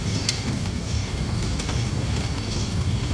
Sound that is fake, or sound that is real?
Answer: fake